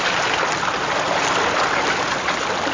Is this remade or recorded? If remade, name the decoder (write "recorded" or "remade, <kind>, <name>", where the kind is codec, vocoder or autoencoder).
recorded